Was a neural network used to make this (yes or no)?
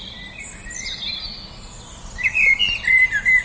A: no